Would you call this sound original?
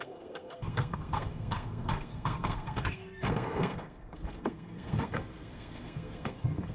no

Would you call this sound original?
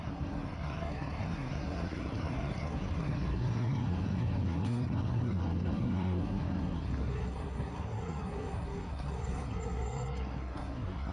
no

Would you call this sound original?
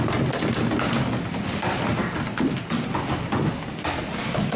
yes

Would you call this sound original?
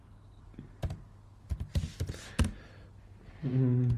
yes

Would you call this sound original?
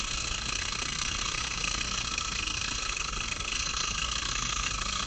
no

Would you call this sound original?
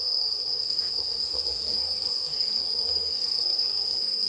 no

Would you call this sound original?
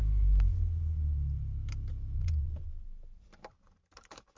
yes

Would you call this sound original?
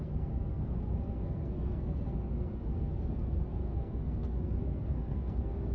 no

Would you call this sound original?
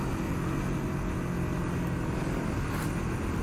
yes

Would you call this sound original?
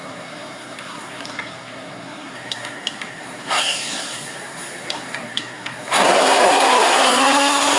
no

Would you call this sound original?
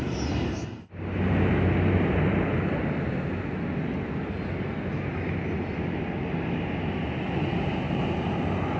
yes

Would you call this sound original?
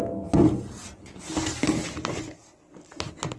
yes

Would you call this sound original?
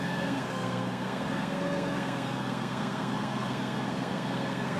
no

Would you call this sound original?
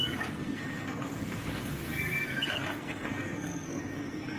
no